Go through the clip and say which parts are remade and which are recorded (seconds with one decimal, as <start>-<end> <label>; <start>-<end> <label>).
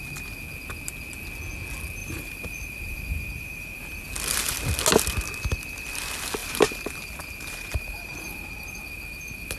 0.0-2.0 recorded; 2.0-3.8 remade; 3.8-6.4 recorded; 6.4-8.5 remade; 8.5-9.6 recorded